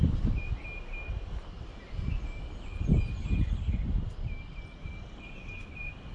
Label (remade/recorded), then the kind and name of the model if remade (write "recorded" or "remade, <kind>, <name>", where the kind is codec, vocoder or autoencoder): recorded